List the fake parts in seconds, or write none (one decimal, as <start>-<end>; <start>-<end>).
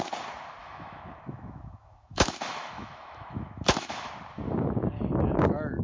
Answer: 0.6-4.1